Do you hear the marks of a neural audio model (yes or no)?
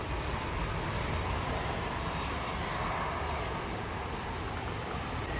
no